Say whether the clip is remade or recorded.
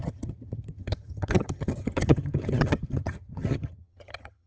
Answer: remade